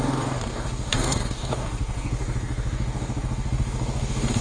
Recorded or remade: remade